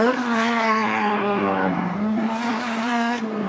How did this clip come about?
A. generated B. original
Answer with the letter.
A